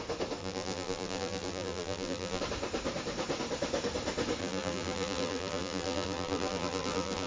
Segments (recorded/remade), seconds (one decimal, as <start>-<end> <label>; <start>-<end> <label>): 0.0-0.4 recorded; 0.4-2.4 remade; 2.4-4.4 recorded; 4.4-7.3 remade